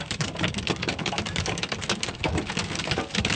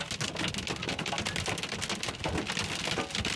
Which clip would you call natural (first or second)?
second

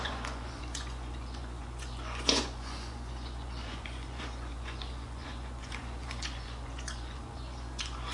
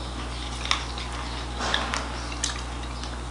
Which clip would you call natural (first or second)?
second